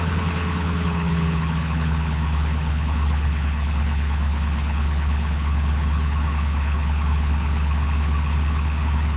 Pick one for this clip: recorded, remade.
remade